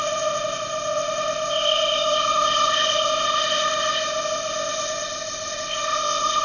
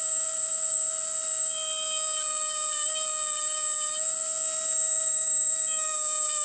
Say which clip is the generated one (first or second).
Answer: first